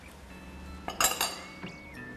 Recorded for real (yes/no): yes